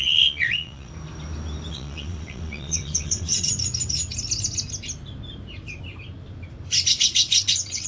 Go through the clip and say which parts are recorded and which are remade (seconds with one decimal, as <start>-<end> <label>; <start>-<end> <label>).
0.0-0.9 remade; 0.9-1.7 recorded; 1.7-3.5 remade; 3.5-6.9 recorded; 6.9-7.9 remade